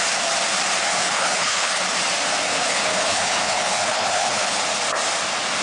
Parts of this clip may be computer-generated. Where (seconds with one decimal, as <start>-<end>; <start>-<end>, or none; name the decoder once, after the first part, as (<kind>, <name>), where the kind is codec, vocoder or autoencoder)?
0.9-1.8 (codec, HILCodec); 2.5-4.6